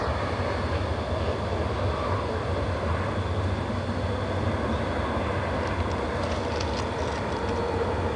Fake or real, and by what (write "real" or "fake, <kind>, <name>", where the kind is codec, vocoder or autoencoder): real